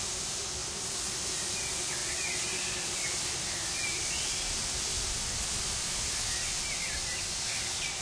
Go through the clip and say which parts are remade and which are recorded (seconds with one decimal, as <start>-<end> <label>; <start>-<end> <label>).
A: 0.0-8.0 recorded